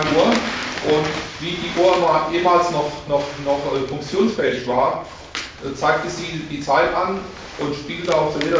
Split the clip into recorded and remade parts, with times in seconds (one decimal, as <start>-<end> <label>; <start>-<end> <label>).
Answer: 0.0-4.1 recorded; 4.1-5.5 remade; 5.5-8.6 recorded